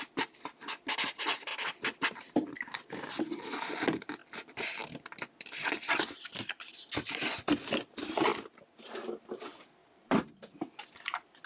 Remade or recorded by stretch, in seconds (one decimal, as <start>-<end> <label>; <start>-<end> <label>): 0.0-9.8 recorded; 9.8-10.3 remade; 10.3-11.5 recorded